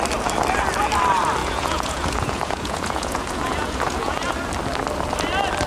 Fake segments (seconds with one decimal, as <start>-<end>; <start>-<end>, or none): 1.4-4.3